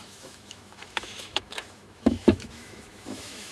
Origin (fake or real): fake